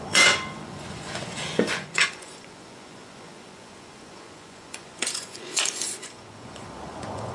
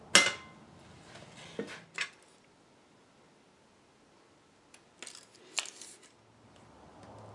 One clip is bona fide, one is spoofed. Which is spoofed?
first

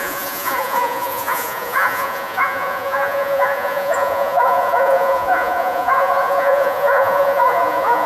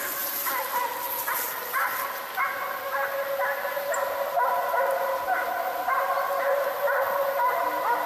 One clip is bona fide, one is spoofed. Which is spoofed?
first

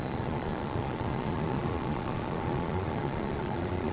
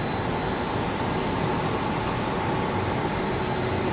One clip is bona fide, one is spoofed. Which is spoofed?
first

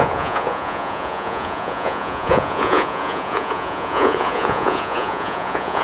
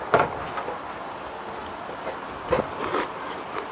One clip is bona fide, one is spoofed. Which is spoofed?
first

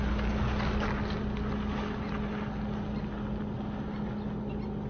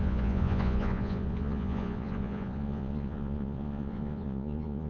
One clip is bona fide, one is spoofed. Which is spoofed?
second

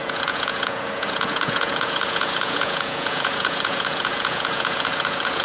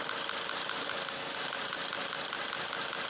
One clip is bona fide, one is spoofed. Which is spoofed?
first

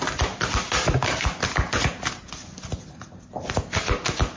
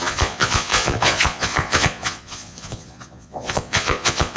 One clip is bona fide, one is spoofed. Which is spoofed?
second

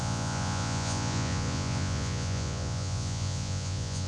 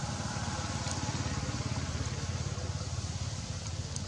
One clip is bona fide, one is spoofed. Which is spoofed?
first